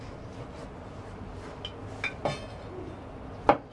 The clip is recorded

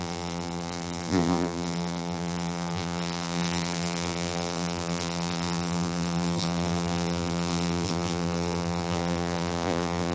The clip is remade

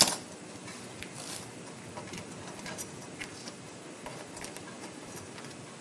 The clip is recorded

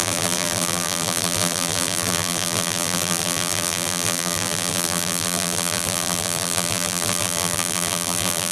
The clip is remade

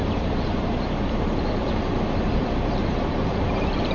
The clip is remade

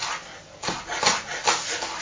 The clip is recorded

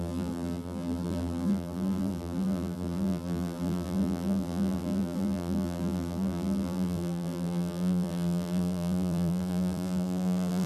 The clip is remade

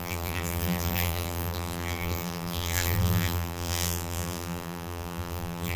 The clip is remade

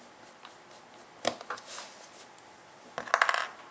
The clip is recorded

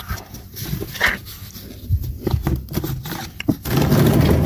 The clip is recorded